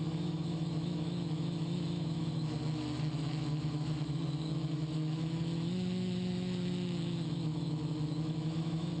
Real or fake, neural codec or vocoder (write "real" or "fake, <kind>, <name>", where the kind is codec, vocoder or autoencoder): fake, autoencoder, DAC-VAE